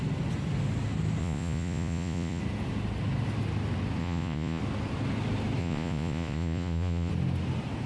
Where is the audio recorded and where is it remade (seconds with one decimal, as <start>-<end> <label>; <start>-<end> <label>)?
0.0-1.2 recorded; 1.2-2.4 remade; 2.4-4.0 recorded; 4.0-4.6 remade; 4.6-5.6 recorded; 5.6-7.1 remade; 7.1-7.9 recorded